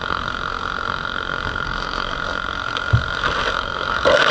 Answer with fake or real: fake